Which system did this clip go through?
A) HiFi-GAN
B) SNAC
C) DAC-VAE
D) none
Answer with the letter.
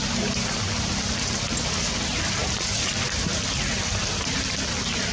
D